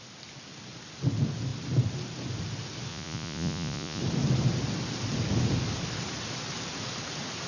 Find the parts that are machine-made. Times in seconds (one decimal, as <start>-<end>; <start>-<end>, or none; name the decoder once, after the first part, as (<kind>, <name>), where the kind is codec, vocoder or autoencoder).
2.9-4.0 (vocoder, Vocos)